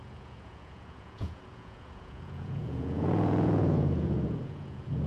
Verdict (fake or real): fake